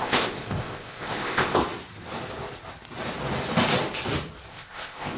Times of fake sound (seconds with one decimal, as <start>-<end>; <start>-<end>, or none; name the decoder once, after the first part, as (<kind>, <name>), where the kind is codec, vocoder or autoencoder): 0.0-1.6 (codec, ZipCodec); 4.5-5.2